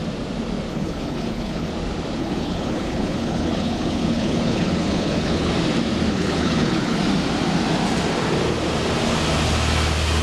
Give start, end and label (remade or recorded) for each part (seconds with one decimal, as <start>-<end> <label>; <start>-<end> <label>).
0.0-0.7 recorded; 0.7-1.7 remade; 1.7-2.2 recorded; 2.2-5.5 remade; 5.5-6.1 recorded; 6.1-7.0 remade; 7.0-10.2 recorded